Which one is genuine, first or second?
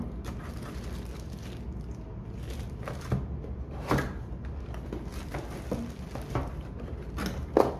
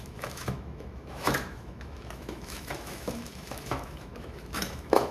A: first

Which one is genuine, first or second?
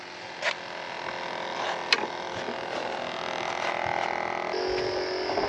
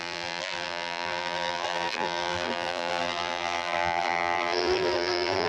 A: first